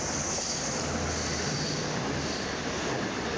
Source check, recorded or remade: recorded